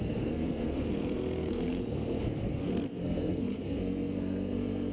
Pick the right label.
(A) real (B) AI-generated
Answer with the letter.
B